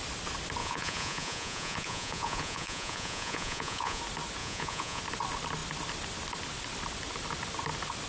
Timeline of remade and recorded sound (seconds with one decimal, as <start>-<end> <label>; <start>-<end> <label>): 0.0-0.6 recorded; 0.6-4.0 remade; 4.0-4.4 recorded; 4.4-5.0 remade; 5.0-8.1 recorded